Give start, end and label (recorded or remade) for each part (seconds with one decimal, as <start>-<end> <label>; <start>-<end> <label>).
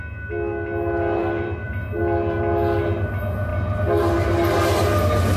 0.0-1.2 recorded; 1.2-2.0 remade; 2.0-5.4 recorded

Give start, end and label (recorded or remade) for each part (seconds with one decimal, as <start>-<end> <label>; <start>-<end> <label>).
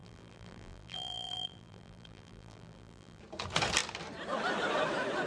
0.0-3.2 remade; 3.2-5.3 recorded